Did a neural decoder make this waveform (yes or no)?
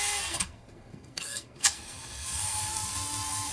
yes